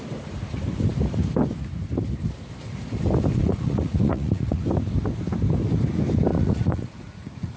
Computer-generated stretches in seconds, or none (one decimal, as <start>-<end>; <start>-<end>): 3.4-4.6; 6.3-7.6